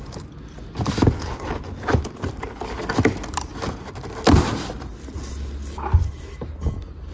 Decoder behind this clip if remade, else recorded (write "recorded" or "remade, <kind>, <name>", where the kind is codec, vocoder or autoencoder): recorded